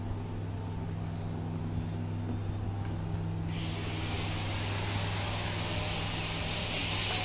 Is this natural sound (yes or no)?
yes